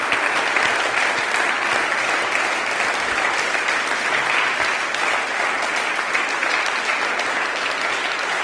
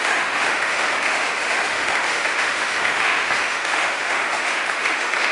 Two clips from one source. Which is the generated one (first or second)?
second